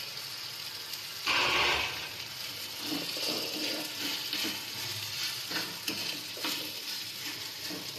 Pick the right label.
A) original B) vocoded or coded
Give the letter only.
A